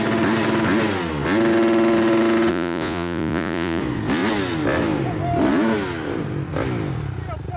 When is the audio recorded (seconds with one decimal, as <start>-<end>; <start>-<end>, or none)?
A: 0.0-2.5; 3.8-7.6